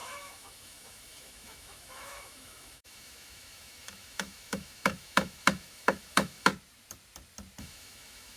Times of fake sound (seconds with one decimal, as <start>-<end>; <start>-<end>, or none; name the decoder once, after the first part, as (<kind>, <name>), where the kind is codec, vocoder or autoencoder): 0.0-6.5 (autoencoder, DAC-VAE); 7.6-8.4